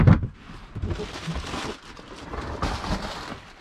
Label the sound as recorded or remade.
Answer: remade